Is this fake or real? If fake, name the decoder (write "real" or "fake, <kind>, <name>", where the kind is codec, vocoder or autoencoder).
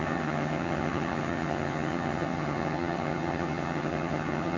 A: fake, vocoder, HiFi-GAN